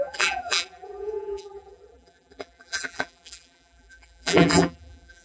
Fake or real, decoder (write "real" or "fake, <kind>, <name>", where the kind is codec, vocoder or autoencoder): fake, vocoder, BigVGAN v2